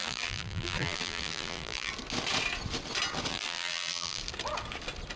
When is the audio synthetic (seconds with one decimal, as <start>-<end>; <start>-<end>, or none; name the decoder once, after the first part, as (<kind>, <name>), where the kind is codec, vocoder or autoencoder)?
0.0-1.9 (vocoder, BigVGAN v2); 3.3-4.2